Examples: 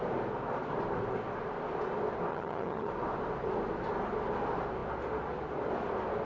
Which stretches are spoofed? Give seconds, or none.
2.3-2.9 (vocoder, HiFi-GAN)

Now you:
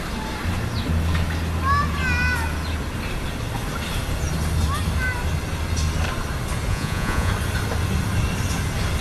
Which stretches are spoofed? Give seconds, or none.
6.7-7.3 (vocoder, Vocos)

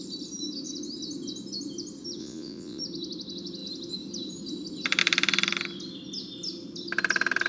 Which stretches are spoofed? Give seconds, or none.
2.2-2.8 (vocoder, Vocos)

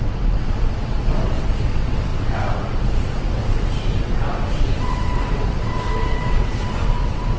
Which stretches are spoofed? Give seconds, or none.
0.0-7.4 (vocoder, WaveNeXt)

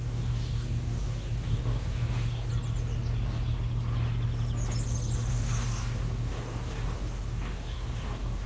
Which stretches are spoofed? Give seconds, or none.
0.0-2.5 (codec, DAC); 5.3-8.5

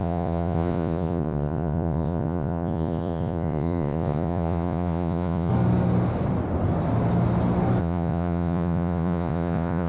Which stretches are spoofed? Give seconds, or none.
0.0-5.5 (vocoder, Vocos); 7.8-9.9

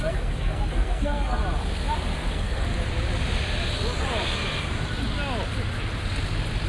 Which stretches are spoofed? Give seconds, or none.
0.0-1.4 (codec, SNAC); 2.3-2.7